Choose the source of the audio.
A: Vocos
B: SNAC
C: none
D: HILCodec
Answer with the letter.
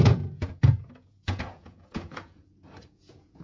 A